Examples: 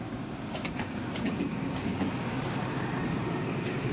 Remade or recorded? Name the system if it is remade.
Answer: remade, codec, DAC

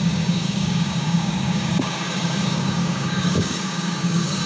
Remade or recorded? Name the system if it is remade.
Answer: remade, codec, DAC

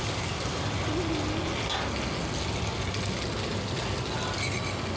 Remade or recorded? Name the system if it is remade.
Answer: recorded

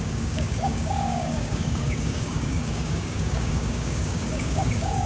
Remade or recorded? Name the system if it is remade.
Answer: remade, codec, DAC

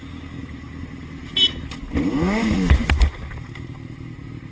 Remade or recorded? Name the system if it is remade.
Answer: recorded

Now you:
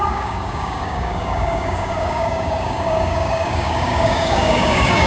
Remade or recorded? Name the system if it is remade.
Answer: remade, codec, DAC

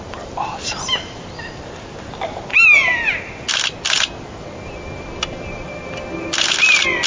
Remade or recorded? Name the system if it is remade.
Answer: recorded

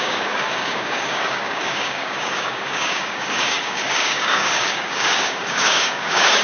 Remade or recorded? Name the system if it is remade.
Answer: remade, codec, DAC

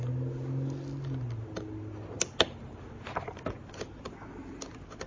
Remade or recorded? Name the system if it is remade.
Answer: recorded